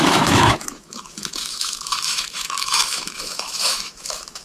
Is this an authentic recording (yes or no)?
no